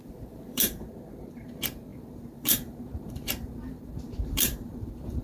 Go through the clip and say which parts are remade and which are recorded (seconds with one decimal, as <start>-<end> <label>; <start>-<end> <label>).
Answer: 0.0-5.2 remade